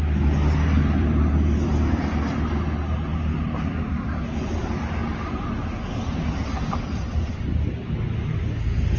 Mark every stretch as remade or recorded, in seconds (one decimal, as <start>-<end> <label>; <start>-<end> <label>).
0.0-0.8 recorded; 0.8-1.3 remade; 1.3-3.1 recorded; 3.1-3.9 remade; 3.9-9.0 recorded